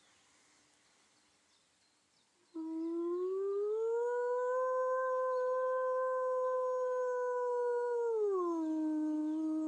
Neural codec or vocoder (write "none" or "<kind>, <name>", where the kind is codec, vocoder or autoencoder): none